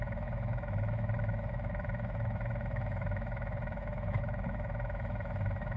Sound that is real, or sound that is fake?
fake